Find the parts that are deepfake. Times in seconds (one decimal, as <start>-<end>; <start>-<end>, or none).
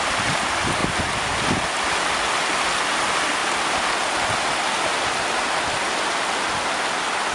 none